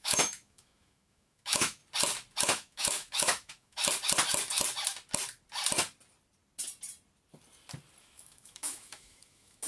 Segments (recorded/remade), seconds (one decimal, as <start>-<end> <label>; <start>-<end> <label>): 0.0-1.8 remade; 1.8-2.4 recorded; 2.4-3.8 remade; 3.8-8.0 recorded; 8.0-9.7 remade